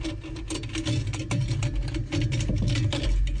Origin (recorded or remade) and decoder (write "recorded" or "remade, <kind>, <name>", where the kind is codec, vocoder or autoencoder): recorded